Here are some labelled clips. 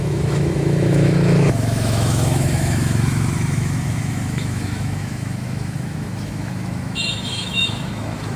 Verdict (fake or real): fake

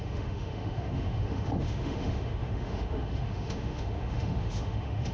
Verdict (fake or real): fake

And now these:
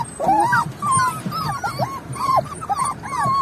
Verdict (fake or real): real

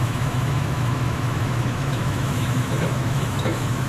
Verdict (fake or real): fake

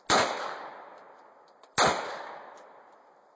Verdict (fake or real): real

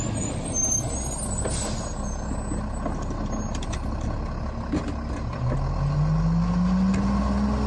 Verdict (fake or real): real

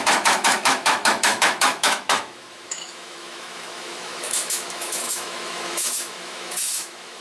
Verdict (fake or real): fake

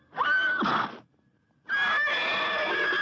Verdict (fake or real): real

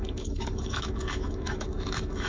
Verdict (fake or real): fake